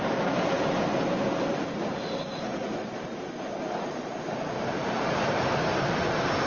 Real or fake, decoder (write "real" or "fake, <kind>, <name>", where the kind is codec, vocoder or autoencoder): fake, vocoder, BigVGAN v2